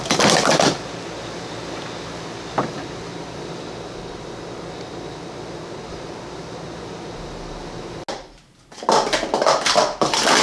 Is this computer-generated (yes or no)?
no